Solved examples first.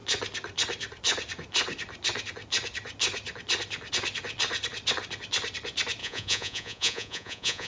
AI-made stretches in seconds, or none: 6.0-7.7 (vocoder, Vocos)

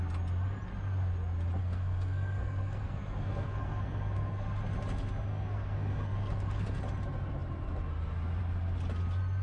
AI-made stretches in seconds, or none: 1.6-4.6 (codec, SNAC); 5.3-6.8

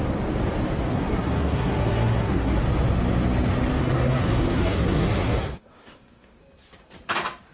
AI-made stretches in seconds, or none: 0.9-2.6 (codec, SNAC); 3.8-6.4

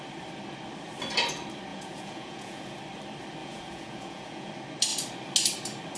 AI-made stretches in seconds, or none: 1.7-2.8 (vocoder, Vocos); 3.4-4.5